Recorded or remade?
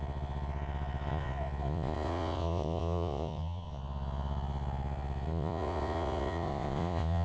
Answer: remade